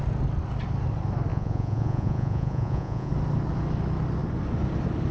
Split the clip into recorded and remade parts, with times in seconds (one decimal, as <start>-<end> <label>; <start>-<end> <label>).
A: 0.0-1.3 recorded; 1.3-3.1 remade; 3.1-5.1 recorded